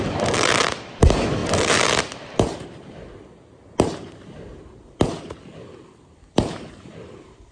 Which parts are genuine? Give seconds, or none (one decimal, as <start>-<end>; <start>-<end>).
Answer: 1.4-5.4

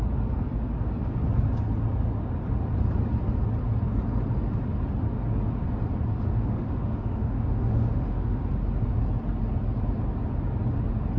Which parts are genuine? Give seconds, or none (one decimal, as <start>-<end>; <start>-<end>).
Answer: 0.0-6.1; 8.4-11.2